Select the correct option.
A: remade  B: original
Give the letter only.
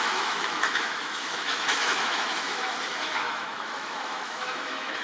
A